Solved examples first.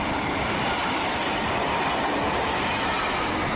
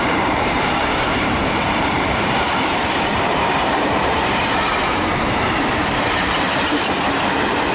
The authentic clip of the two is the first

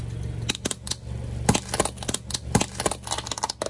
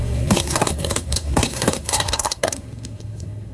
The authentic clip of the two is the first